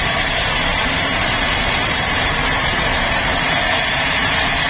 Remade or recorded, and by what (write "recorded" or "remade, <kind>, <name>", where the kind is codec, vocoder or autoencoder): remade, vocoder, BigVGAN v2